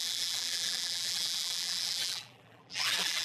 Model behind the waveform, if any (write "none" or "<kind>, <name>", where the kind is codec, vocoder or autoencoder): vocoder, BigVGAN v2